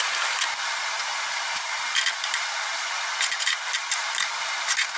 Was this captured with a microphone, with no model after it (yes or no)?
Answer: yes